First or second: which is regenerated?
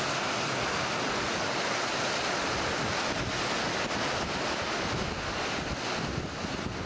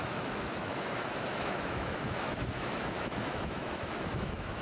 second